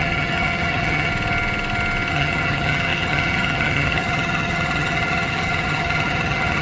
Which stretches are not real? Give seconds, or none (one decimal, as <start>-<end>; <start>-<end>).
0.0-1.1; 2.1-6.6